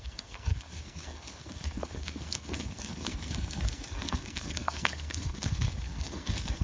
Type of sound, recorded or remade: remade